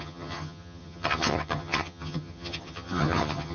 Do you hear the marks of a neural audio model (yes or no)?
yes